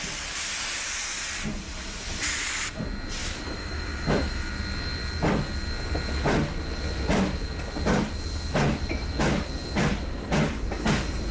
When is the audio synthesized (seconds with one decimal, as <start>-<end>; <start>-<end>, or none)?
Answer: 3.2-4.5